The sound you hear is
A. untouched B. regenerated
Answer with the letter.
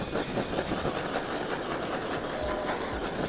A